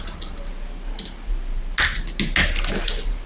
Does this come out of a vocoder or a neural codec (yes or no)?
no